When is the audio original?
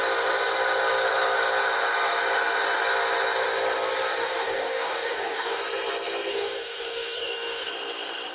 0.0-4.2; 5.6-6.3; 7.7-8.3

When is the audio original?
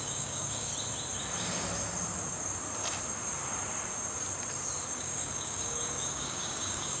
0.7-4.9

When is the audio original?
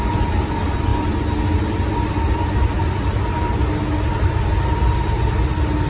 0.0-5.9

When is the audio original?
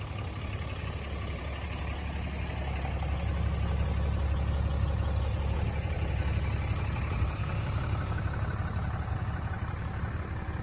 0.0-7.4; 8.2-10.6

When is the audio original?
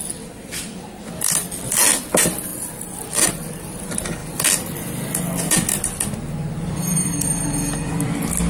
0.0-8.5